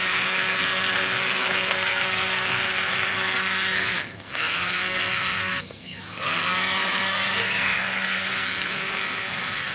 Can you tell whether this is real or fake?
fake